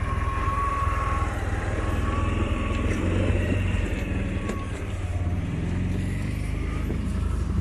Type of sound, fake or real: fake